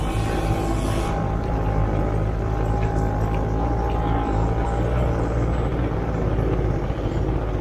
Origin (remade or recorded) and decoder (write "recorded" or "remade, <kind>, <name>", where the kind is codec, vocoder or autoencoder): recorded